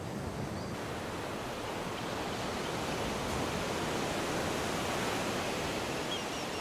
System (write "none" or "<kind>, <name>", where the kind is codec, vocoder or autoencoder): none